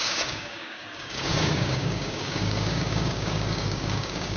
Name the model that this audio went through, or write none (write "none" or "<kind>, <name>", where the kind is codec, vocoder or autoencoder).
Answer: codec, DAC